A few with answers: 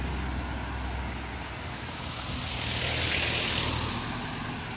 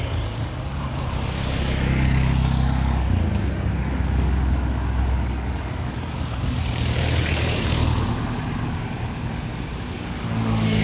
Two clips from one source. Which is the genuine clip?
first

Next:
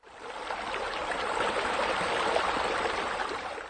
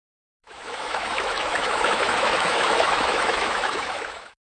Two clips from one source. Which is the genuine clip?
first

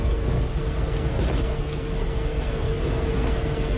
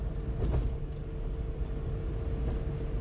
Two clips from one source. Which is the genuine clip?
second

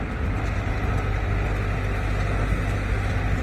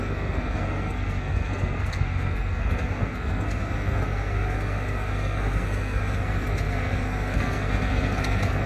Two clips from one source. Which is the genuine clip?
first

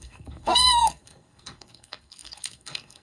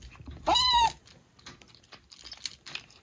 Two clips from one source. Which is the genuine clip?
second